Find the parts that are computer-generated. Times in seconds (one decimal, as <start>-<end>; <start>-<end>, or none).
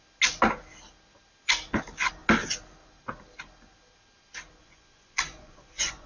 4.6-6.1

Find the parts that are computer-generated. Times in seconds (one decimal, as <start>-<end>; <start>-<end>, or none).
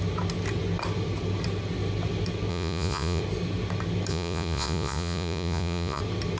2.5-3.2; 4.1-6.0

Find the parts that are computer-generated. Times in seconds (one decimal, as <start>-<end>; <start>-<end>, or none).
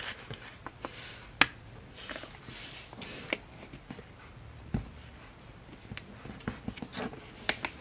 none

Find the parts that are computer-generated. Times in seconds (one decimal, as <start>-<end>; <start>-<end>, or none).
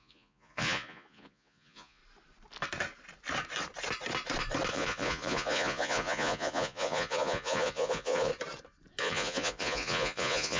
0.0-2.0; 4.7-8.3; 9.0-10.6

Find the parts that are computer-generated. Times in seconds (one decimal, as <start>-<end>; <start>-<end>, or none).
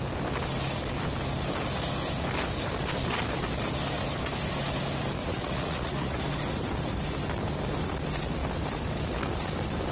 5.2-6.2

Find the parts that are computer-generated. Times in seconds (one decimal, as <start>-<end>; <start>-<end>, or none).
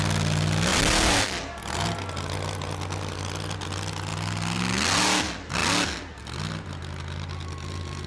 none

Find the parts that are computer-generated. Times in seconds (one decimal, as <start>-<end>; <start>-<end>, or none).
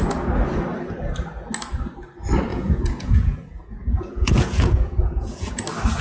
2.5-5.6